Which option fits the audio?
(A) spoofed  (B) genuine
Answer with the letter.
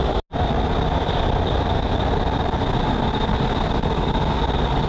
B